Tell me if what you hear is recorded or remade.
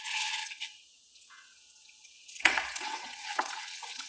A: remade